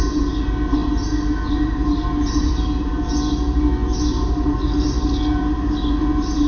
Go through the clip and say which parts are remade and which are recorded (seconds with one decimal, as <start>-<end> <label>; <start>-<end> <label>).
0.0-6.5 recorded